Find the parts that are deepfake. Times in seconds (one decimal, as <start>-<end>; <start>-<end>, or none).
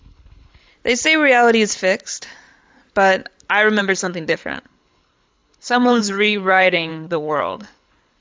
0.0-0.7; 3.8-8.2